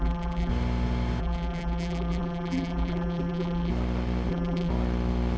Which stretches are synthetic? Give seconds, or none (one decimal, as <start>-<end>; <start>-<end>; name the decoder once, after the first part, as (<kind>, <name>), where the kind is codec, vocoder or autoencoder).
0.0-0.5 (vocoder, BigVGAN v2); 1.2-3.7; 4.3-4.7